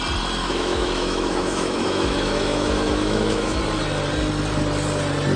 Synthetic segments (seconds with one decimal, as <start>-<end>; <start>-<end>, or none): 0.4-3.6